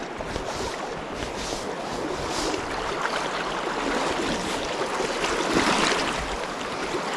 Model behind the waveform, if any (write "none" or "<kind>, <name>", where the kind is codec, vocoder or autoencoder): none